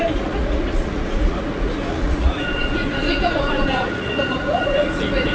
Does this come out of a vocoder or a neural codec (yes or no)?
yes